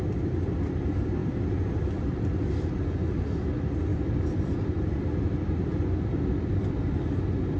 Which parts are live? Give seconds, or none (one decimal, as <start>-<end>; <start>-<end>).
0.0-1.2; 2.0-3.9; 6.8-7.6